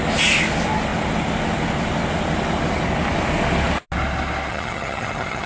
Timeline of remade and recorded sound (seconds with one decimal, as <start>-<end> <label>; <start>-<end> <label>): 0.0-4.5 recorded; 4.5-5.5 remade